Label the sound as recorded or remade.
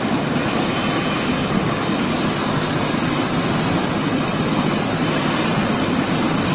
recorded